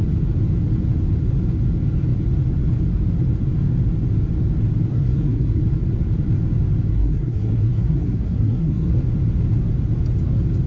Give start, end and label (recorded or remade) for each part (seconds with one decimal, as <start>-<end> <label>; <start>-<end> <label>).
0.0-4.9 recorded; 4.9-5.6 remade; 5.6-6.9 recorded; 6.9-9.0 remade; 9.0-10.7 recorded